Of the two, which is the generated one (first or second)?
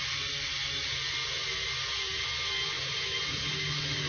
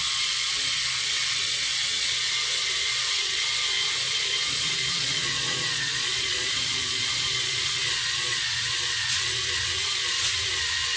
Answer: second